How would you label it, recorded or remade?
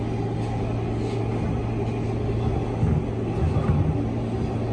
recorded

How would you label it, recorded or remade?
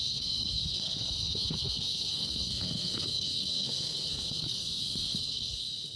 remade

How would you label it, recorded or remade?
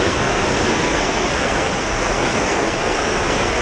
remade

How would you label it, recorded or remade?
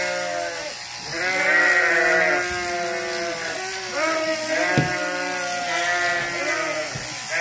recorded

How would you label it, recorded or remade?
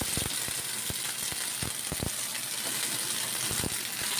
recorded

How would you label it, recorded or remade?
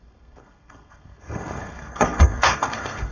remade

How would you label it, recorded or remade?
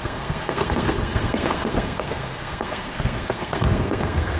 remade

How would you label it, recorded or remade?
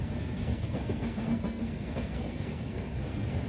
remade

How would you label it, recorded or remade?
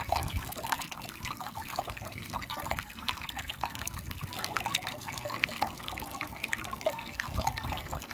remade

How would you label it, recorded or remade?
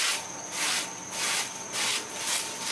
recorded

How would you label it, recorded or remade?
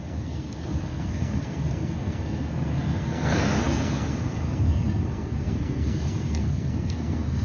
remade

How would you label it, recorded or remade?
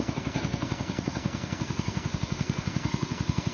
remade